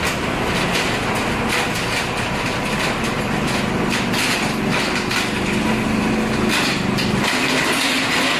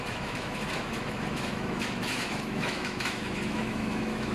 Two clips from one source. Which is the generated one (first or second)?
second